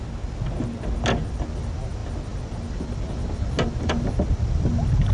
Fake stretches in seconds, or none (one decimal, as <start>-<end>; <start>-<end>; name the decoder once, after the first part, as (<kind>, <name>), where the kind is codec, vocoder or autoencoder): none